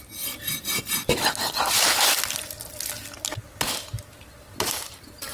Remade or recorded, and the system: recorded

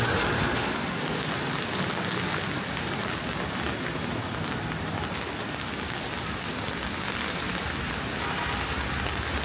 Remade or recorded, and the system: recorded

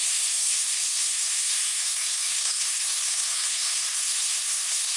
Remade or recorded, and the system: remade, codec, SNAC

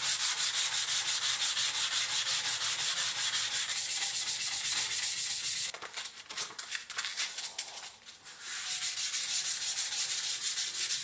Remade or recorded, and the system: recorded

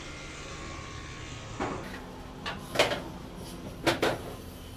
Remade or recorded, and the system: recorded